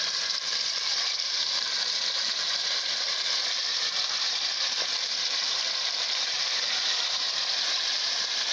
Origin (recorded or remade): remade